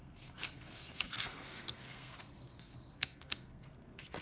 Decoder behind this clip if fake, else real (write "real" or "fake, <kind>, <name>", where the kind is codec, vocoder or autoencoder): fake, codec, SNAC